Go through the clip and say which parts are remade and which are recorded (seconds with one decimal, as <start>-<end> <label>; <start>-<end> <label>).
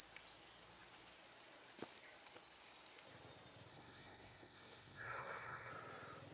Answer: 0.0-3.7 recorded; 3.7-5.7 remade; 5.7-6.3 recorded